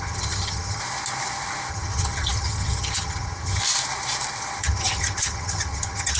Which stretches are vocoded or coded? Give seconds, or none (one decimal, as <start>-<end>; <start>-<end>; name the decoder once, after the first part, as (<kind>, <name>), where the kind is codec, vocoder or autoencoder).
0.0-0.8 (vocoder, HiFi-GAN); 1.7-3.6; 4.6-6.2